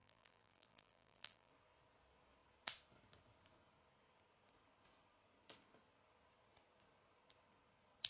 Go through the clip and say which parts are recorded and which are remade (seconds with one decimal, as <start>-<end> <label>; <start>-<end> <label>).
0.0-1.5 remade; 1.5-8.1 recorded